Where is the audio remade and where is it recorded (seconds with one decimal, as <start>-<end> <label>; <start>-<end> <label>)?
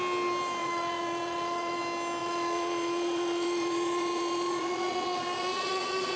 0.0-0.6 recorded; 0.6-1.8 remade; 1.8-2.2 recorded; 2.2-6.2 remade